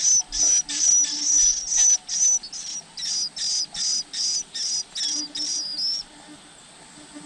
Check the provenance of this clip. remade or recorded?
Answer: recorded